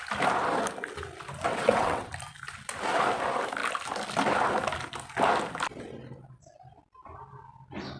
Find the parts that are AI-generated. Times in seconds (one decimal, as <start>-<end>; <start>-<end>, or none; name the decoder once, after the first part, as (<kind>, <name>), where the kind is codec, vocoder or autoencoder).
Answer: 1.5-2.1 (vocoder, WaveNeXt)